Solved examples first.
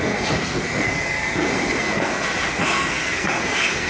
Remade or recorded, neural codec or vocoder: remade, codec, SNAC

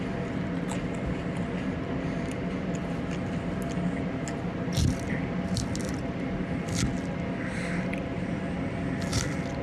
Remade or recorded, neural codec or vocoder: recorded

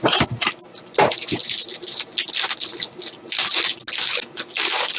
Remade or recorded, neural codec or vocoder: recorded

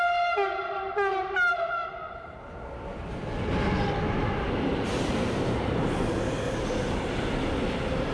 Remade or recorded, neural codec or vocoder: recorded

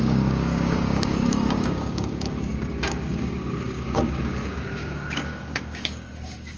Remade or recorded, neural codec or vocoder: remade, codec, DAC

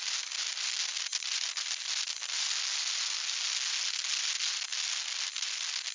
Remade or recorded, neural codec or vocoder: recorded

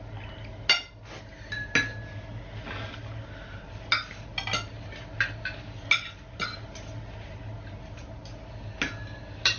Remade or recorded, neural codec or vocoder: recorded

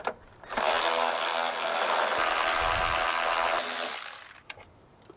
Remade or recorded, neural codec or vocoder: recorded